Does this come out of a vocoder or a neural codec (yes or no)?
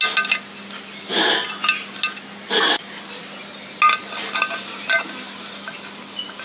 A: no